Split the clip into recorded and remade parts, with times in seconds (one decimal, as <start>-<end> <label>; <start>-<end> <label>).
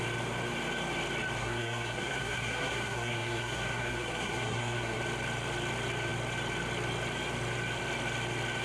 0.0-1.4 recorded; 1.4-5.0 remade; 5.0-8.6 recorded